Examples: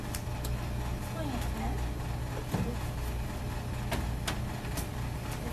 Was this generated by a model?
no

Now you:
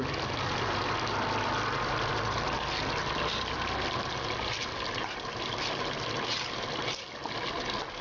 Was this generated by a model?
no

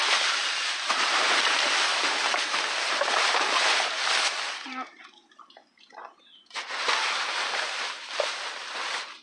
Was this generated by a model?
yes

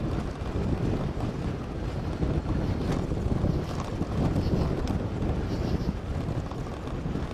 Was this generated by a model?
no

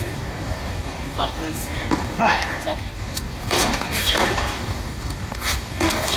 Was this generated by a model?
yes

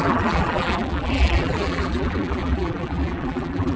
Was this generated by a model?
yes